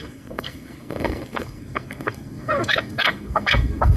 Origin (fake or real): fake